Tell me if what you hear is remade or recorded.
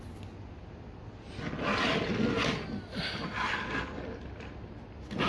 recorded